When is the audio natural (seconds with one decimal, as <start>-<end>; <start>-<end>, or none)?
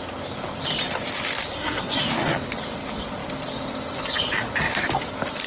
0.0-1.5; 2.0-5.5